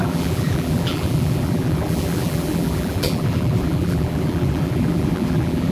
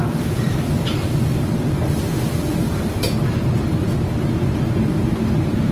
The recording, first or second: second